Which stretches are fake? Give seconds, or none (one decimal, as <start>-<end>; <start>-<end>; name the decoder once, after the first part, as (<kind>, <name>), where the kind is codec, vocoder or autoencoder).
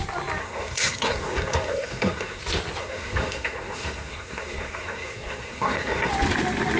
0.4-2.4 (codec, SNAC); 2.8-6.1